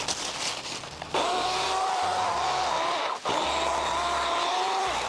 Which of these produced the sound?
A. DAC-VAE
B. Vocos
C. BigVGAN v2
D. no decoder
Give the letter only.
D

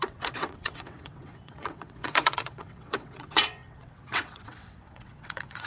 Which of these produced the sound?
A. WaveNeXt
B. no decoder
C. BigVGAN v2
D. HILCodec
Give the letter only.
A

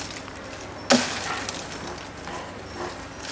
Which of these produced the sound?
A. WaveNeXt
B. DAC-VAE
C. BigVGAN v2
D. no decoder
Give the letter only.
D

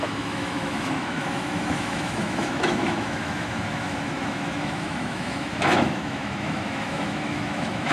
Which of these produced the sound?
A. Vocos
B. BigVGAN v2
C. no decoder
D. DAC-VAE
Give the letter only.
D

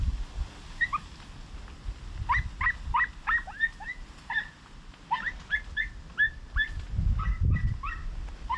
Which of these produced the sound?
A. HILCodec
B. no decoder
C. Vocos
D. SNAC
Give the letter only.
B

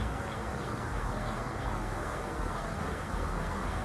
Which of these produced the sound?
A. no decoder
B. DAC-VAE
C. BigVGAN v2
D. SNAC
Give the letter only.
D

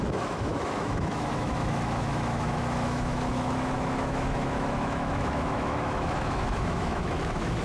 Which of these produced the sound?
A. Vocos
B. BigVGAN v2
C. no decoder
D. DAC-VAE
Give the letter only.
D